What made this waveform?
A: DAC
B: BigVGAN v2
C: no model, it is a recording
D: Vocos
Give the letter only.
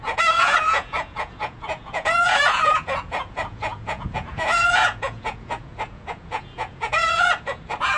D